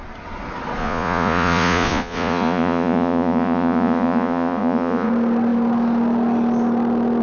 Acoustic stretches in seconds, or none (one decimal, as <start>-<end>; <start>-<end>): 0.0-0.8; 5.1-7.2